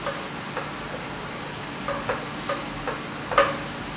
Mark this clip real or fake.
real